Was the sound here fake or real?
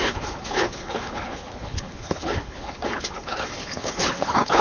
fake